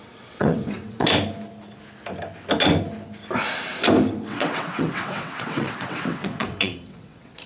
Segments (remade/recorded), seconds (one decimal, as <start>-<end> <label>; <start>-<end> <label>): 0.0-1.1 remade; 1.1-4.2 recorded; 4.2-7.5 remade